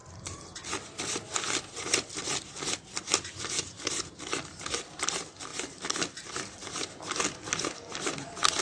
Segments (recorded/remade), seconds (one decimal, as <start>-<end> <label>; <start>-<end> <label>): 0.0-8.6 recorded